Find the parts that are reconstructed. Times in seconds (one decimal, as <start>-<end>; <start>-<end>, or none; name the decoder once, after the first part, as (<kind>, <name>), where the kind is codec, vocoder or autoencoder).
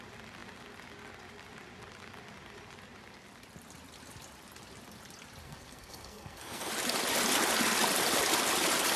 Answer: 5.4-6.7 (codec, SNAC)